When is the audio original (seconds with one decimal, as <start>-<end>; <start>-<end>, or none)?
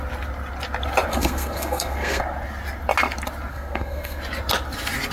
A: 0.0-1.1; 2.2-3.5; 4.2-5.1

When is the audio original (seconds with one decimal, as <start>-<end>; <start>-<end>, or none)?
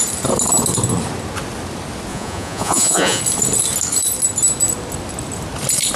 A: 0.0-2.1; 3.2-6.0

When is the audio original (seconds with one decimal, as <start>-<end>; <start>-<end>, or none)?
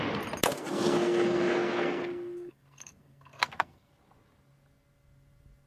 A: 0.0-0.5; 3.9-5.7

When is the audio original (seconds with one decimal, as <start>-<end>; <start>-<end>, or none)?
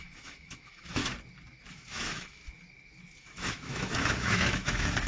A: 1.0-1.7; 2.4-3.2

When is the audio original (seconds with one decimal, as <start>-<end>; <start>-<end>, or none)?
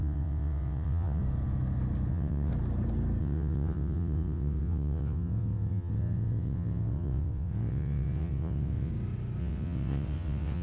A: 1.2-2.1; 2.5-3.2; 8.9-9.4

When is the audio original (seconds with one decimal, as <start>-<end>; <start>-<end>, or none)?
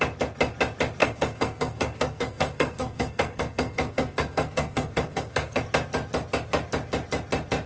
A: 0.0-1.0; 5.6-7.7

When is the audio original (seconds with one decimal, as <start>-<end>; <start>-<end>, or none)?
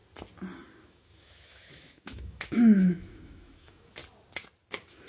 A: 0.0-0.8; 4.0-5.1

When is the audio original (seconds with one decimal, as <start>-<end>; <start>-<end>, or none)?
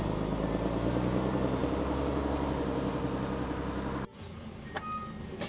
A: 0.0-5.5